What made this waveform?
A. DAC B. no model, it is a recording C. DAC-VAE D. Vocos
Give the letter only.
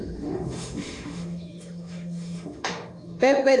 C